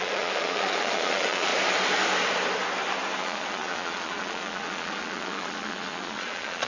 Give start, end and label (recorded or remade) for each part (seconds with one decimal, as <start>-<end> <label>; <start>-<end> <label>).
0.0-1.5 remade; 1.5-3.2 recorded; 3.2-6.7 remade